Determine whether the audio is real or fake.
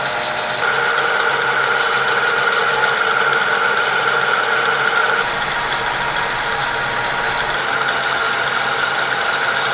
real